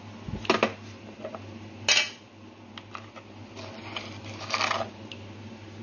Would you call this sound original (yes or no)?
yes